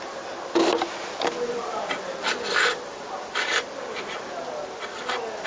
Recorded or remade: recorded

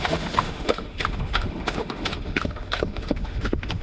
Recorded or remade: remade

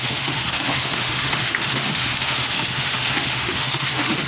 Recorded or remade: remade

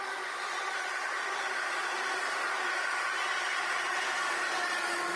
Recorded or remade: recorded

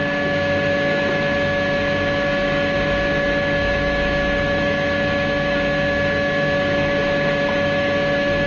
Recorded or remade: remade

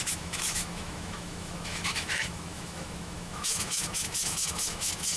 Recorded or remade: remade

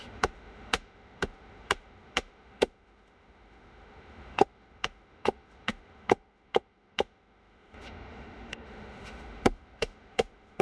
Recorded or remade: remade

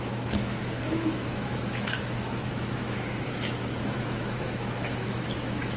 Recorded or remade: remade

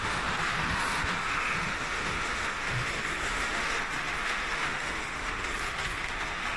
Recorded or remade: remade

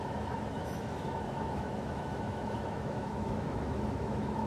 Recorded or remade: remade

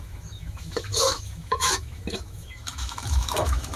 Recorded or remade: remade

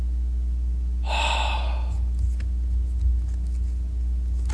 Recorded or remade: recorded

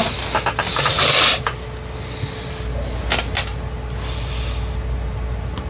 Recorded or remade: recorded